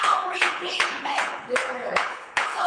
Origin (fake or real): fake